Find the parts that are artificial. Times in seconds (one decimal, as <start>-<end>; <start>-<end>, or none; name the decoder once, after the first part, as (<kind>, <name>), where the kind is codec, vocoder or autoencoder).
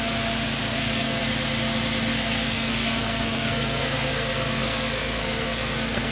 0.7-1.2 (codec, SNAC); 2.1-6.1